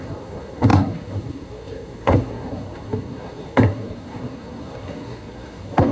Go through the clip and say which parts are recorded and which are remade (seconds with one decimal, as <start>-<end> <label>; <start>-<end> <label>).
0.0-5.9 remade